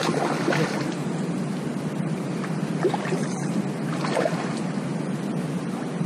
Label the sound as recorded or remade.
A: recorded